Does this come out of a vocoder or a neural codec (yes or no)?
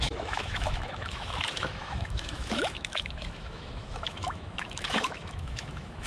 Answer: yes